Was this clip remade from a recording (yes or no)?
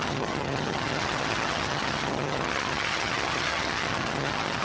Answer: yes